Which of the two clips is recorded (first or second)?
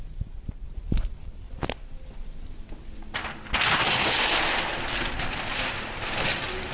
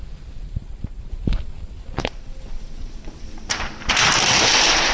first